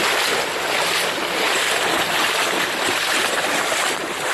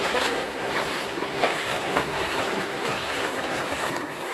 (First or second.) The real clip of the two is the first